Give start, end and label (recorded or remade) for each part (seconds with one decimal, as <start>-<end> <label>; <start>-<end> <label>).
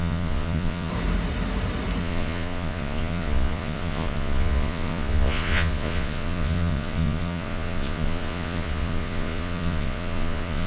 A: 0.0-0.9 remade; 0.9-2.0 recorded; 2.0-10.7 remade